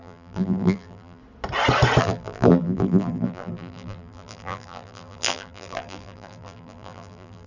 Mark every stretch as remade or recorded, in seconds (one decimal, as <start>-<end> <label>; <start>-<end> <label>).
0.0-1.2 remade; 1.2-2.0 recorded; 2.0-7.5 remade